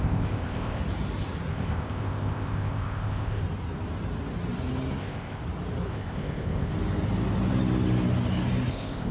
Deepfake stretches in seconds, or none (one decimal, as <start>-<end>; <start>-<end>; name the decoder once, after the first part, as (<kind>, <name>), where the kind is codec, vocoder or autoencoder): 0.0-0.8 (codec, ZipCodec); 1.5-3.4; 5.0-5.4; 5.9-6.7; 8.7-9.1